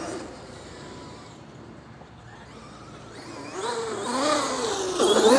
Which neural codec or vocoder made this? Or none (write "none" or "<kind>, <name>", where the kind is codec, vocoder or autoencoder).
none